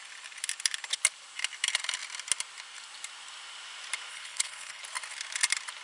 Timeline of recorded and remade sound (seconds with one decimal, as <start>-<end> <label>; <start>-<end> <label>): 0.0-4.1 recorded; 4.1-4.8 remade; 4.8-5.8 recorded